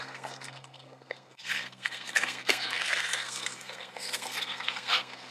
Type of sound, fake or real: fake